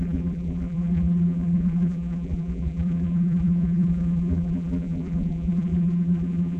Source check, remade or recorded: remade